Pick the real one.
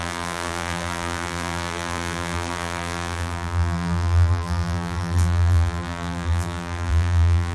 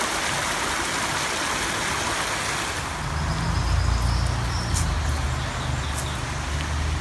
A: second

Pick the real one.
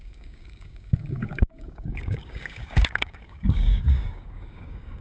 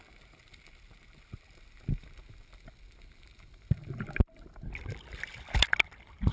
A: second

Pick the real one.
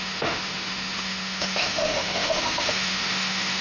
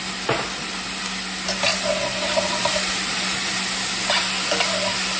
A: second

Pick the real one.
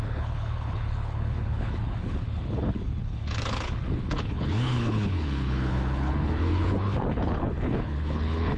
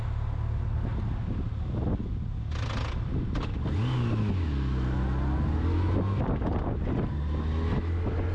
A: second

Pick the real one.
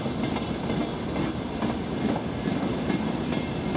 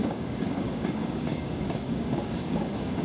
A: first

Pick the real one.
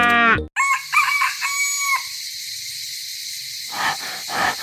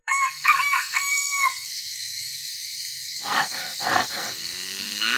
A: first